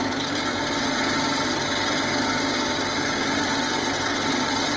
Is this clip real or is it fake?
real